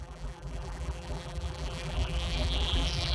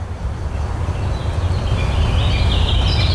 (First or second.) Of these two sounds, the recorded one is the second